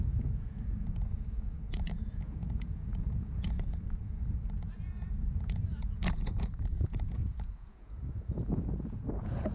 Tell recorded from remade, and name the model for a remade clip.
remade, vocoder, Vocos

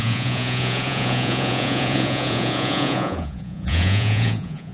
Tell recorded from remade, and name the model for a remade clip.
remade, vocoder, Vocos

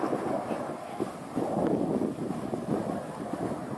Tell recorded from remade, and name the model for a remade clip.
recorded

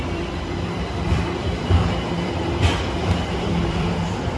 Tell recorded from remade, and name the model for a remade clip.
remade, vocoder, BigVGAN v2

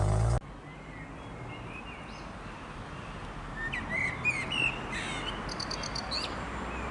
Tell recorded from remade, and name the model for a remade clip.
recorded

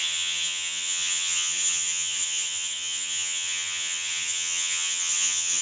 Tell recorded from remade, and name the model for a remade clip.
remade, vocoder, HiFi-GAN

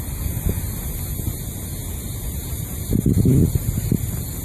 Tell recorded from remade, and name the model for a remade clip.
recorded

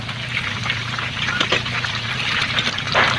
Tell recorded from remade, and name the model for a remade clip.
recorded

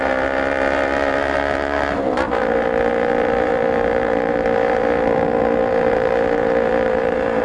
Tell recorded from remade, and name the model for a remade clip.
remade, vocoder, BigVGAN v2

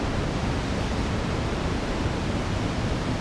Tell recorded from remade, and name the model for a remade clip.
recorded